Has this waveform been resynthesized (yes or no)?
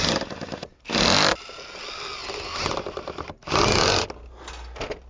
no